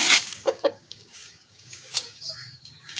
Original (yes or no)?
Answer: no